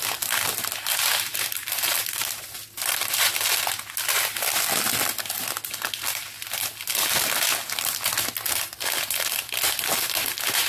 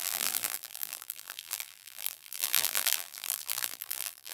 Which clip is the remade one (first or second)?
second